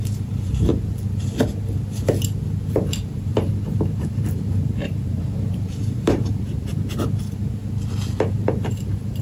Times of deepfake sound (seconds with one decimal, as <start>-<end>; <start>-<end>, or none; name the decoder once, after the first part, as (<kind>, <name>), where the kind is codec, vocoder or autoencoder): 0.0-0.7 (vocoder, BigVGAN v2); 2.7-6.7; 8.4-9.2